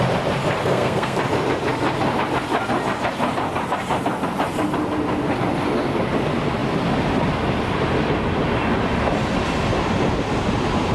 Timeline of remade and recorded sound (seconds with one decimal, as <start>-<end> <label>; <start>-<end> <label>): 0.0-0.6 recorded; 0.6-1.2 remade; 1.2-10.9 recorded